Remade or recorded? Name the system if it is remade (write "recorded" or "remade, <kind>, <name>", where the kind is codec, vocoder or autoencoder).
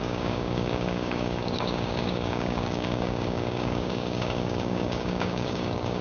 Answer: remade, codec, DAC